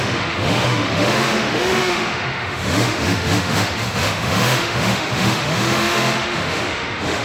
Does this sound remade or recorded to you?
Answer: remade